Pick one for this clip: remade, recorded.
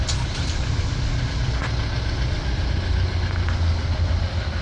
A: recorded